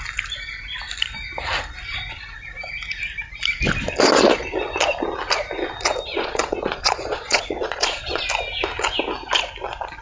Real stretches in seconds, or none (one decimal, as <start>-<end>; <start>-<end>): 0.0-6.1; 8.2-10.0